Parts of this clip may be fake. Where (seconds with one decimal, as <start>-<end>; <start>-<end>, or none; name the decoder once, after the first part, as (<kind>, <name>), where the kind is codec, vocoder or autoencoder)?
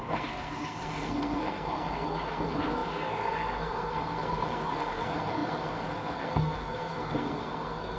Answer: 0.0-8.0 (codec, SNAC)